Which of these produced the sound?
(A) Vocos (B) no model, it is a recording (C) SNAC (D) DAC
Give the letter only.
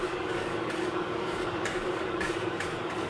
D